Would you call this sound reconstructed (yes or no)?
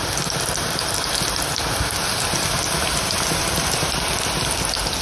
yes